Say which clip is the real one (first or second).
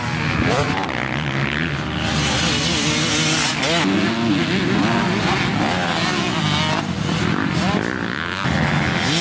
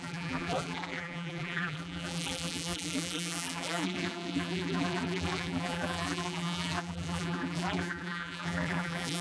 first